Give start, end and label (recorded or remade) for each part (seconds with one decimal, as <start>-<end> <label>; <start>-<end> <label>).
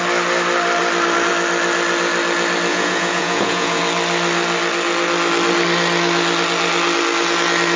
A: 0.0-2.7 recorded; 2.7-3.8 remade; 3.8-7.8 recorded